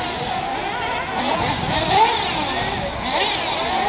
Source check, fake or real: real